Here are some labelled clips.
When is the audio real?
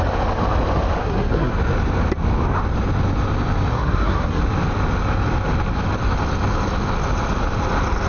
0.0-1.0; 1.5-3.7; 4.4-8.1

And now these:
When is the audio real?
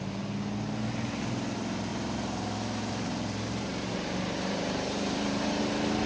0.0-1.9; 5.6-6.1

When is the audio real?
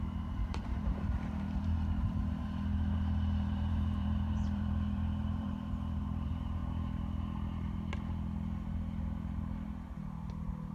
6.6-10.7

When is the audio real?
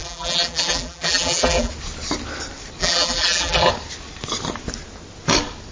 1.7-2.8; 3.7-5.7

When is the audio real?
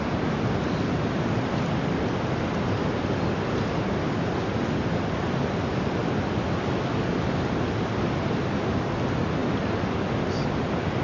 0.0-11.0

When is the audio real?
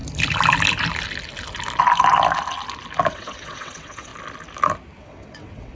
0.0-3.1; 4.1-5.0